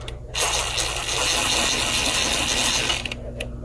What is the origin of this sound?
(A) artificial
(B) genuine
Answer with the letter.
B